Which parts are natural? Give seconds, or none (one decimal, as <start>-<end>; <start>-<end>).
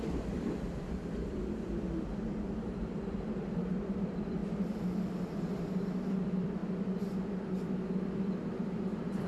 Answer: 4.4-5.2; 6.6-9.3